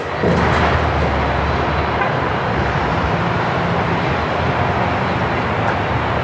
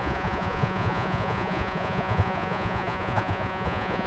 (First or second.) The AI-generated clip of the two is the second